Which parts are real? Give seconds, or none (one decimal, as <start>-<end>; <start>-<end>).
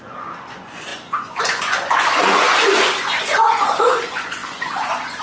none